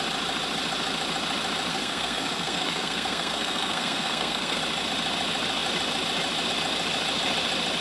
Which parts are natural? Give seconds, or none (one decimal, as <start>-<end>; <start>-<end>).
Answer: 0.0-1.7; 4.6-7.8